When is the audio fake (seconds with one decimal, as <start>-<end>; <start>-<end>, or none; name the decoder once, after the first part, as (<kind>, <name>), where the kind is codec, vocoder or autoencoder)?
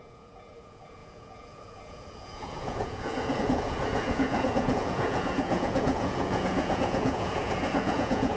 0.0-8.4 (vocoder, Vocos)